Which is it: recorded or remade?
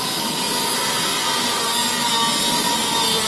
recorded